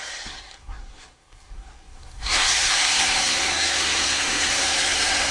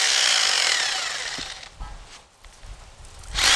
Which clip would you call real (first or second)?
second